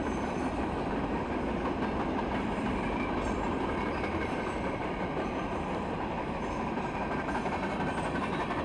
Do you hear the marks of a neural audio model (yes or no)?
yes